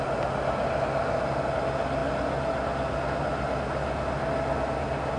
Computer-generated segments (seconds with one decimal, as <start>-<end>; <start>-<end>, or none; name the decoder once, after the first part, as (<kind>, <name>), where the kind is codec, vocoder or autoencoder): none